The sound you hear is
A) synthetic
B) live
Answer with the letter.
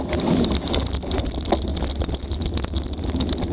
B